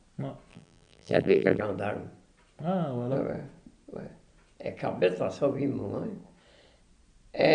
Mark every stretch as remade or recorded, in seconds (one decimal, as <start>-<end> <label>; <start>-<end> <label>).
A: 0.0-0.5 recorded; 0.5-1.6 remade; 1.6-7.5 recorded